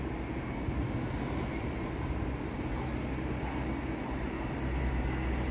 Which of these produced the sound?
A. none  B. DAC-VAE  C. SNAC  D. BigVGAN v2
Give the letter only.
A